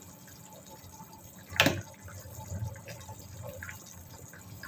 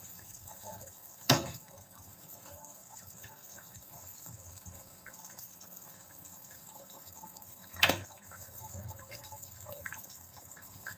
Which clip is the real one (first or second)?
first